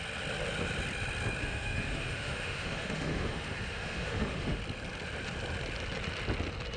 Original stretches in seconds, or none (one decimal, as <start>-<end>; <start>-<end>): 0.0-1.4; 4.6-6.8